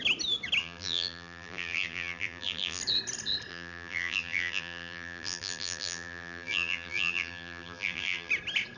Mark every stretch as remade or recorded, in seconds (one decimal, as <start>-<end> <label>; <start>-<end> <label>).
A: 0.0-0.6 recorded; 0.6-2.8 remade; 2.8-3.5 recorded; 3.5-8.3 remade; 8.3-8.8 recorded